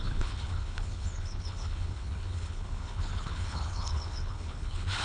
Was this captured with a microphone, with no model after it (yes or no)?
no